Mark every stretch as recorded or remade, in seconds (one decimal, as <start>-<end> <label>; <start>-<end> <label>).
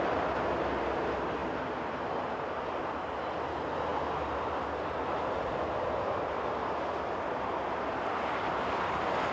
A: 0.0-9.3 recorded